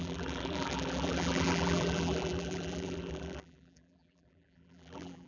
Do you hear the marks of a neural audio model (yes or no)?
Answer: yes